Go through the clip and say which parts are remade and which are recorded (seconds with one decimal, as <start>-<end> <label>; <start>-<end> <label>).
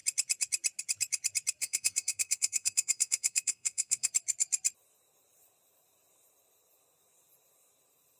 0.0-1.6 recorded; 1.6-4.1 remade; 4.1-8.2 recorded